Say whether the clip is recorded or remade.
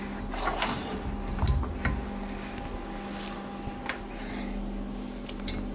recorded